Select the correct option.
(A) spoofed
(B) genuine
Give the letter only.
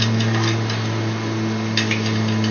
B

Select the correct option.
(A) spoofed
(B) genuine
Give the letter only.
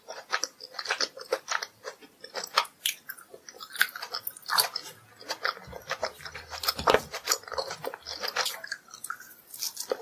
A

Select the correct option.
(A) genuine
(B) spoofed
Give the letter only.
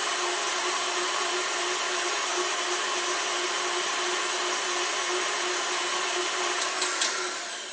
A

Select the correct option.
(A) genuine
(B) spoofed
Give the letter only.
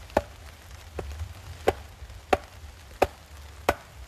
A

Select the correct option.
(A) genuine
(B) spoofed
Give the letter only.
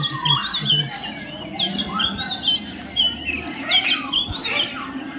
A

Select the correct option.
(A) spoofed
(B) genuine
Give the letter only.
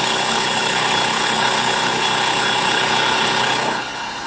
A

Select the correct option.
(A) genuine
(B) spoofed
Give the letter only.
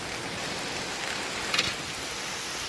A